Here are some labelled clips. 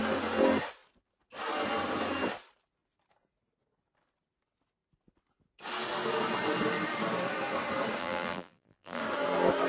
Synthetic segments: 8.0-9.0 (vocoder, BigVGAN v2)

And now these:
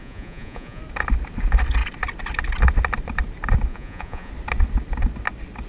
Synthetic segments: 0.0-0.8 (vocoder, Vocos); 3.7-4.3